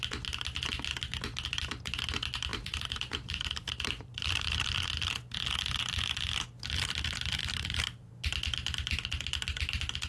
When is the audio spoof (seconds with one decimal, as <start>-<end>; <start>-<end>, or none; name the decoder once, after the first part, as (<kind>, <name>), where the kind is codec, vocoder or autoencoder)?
2.5-4.7 (vocoder, BigVGAN v2); 7.4-8.1